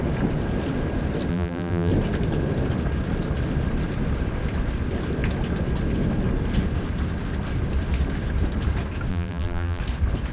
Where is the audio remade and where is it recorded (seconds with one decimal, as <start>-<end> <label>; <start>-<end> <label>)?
0.0-1.3 recorded; 1.3-1.9 remade; 1.9-9.1 recorded; 9.1-9.8 remade; 9.8-10.3 recorded

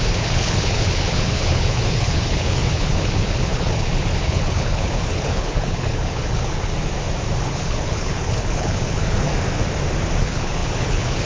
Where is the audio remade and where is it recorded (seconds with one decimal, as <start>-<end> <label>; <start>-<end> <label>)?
0.0-6.7 remade; 6.7-7.4 recorded; 7.4-9.3 remade; 9.3-10.2 recorded; 10.2-11.3 remade